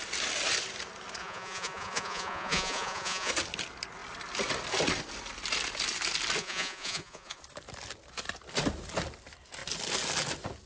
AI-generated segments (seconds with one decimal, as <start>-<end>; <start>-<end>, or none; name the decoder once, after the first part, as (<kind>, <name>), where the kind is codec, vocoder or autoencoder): 1.2-3.3 (vocoder, Vocos); 6.4-7.4